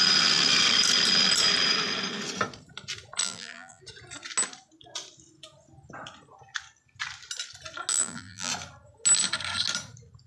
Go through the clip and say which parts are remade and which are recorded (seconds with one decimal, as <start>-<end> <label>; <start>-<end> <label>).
0.0-3.2 recorded; 3.2-3.8 remade; 3.8-7.9 recorded; 7.9-8.5 remade; 8.5-10.3 recorded